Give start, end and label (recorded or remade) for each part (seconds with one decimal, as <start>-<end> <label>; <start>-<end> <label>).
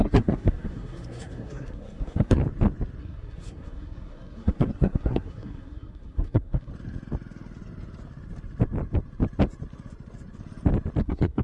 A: 0.0-2.4 remade; 2.4-3.0 recorded; 3.0-6.7 remade; 6.7-11.0 recorded; 11.0-11.4 remade